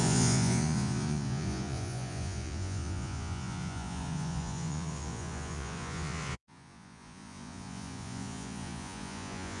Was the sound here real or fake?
fake